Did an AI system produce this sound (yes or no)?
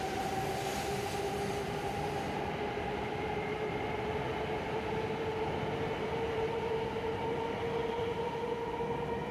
no